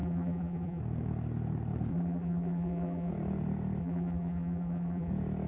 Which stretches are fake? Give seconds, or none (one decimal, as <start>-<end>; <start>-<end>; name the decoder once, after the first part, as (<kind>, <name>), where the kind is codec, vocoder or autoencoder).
0.0-0.8 (vocoder, BigVGAN v2); 1.9-3.1; 3.8-5.1